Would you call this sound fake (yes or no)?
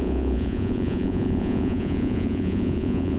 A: yes